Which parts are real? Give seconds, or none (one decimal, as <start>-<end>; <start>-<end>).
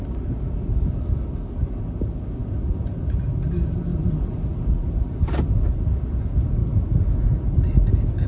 0.0-8.3